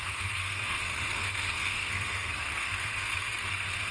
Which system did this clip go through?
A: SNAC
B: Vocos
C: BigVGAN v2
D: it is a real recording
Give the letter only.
A